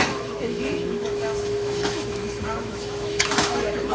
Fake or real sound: fake